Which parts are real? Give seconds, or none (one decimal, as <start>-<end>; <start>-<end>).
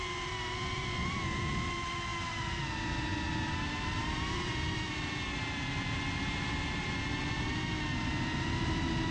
0.0-9.1